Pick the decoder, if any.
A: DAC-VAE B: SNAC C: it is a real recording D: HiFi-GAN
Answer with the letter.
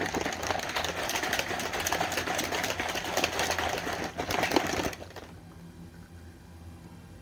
C